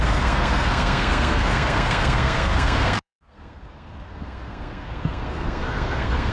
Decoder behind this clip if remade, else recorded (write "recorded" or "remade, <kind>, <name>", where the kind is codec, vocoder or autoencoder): remade, codec, SNAC